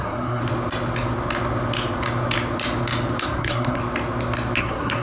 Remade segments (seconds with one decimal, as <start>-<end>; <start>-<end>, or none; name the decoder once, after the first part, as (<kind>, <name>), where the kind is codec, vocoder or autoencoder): 0.0-0.4 (codec, SNAC); 3.2-3.8; 4.6-5.0